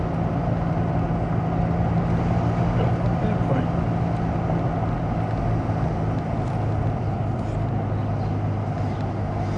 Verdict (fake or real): real